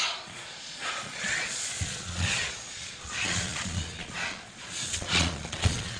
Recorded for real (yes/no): no